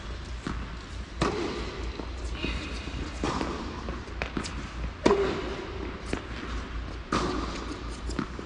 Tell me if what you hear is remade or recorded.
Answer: recorded